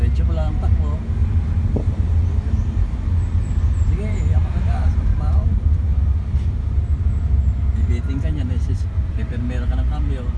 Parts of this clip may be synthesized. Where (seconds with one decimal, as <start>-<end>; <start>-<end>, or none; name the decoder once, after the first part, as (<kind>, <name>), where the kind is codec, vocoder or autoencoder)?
none